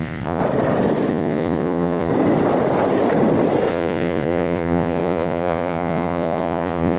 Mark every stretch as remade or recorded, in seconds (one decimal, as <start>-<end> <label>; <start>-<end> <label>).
0.0-0.4 remade; 0.4-1.1 recorded; 1.1-2.1 remade; 2.1-3.7 recorded; 3.7-7.0 remade